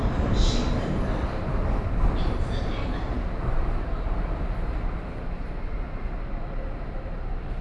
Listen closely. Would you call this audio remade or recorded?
remade